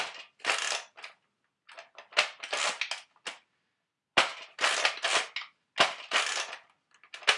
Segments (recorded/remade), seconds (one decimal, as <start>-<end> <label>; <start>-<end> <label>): 0.0-7.4 recorded